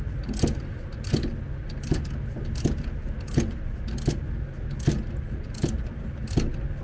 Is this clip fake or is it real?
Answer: real